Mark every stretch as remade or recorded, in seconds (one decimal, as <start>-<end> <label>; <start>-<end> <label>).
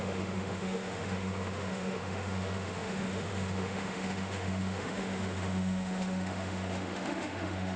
0.0-7.8 remade